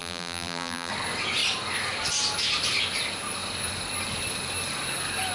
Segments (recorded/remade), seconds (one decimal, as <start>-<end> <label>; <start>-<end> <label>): 0.0-0.9 remade; 0.9-5.3 recorded